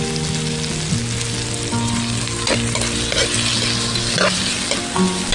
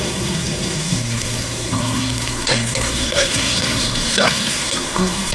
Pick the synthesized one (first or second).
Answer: second